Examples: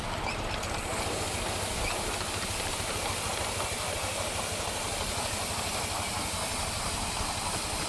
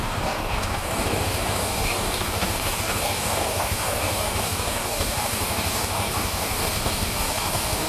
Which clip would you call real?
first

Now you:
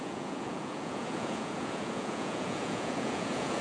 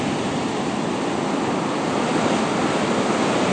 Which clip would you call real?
second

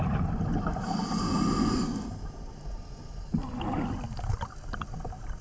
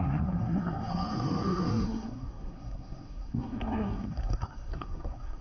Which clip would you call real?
first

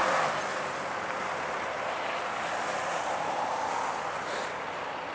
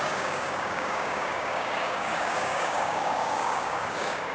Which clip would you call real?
first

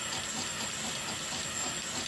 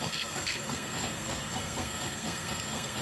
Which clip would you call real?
first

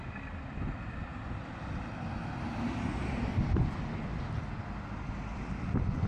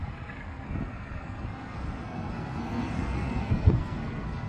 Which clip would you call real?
first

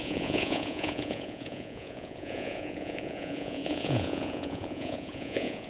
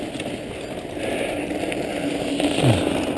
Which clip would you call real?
second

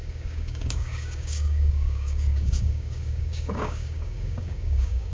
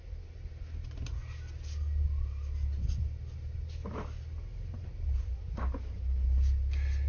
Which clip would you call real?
second